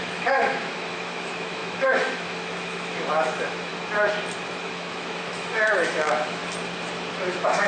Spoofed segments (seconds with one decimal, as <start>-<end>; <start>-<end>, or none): 0.0-3.7; 4.5-6.4; 7.1-7.7

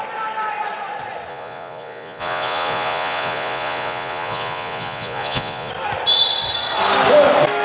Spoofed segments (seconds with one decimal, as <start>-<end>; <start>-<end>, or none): 1.3-5.7

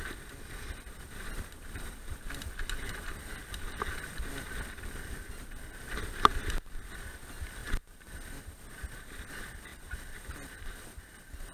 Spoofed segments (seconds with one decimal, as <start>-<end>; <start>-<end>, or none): none

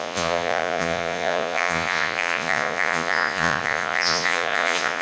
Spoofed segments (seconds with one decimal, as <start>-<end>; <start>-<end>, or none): 0.0-5.0

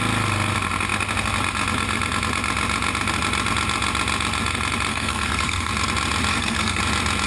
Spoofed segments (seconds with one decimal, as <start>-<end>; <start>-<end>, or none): 4.9-5.7; 6.3-6.8

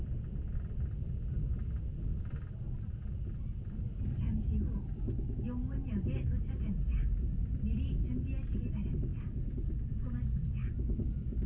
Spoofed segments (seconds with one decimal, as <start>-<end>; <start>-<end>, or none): none

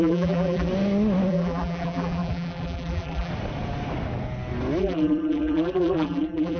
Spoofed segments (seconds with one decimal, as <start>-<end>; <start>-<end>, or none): 0.0-0.7; 1.3-3.3; 4.8-6.6

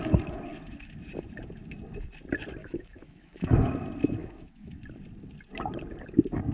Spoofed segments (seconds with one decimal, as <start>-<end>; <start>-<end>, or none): 2.6-3.7; 4.2-4.8